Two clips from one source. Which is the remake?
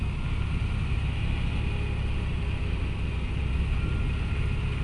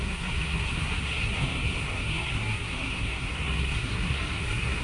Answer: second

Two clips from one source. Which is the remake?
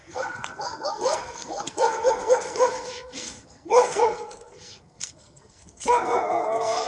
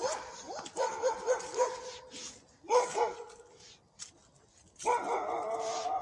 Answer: first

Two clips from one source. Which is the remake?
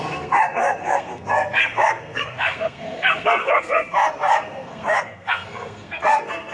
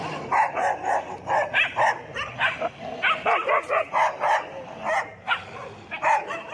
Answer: first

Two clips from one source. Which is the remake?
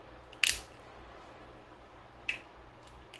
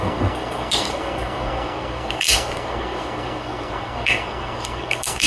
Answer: second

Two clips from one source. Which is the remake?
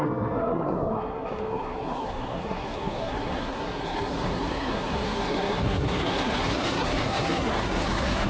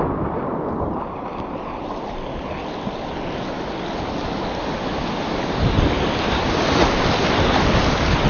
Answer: first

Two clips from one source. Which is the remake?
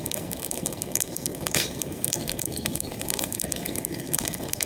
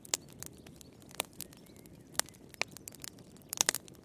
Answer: first